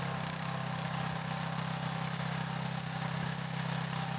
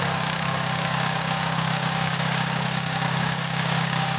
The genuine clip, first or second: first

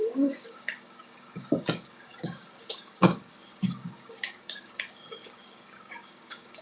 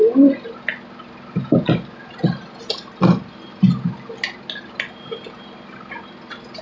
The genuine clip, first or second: second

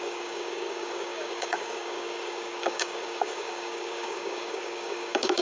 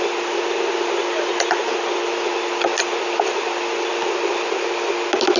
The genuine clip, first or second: second